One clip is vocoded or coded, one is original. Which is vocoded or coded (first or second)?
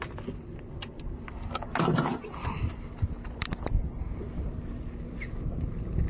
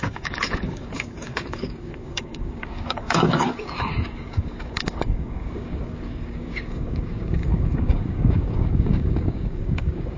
second